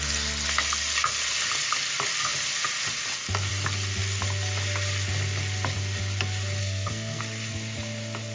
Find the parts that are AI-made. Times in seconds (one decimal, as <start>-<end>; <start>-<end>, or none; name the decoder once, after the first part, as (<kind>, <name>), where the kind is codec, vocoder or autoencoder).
6.6-7.2 (codec, SNAC)